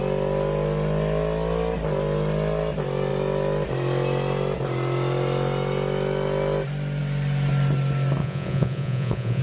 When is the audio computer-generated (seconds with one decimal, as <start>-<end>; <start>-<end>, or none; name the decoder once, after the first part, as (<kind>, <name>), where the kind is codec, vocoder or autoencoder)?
8.2-9.4 (vocoder, Vocos)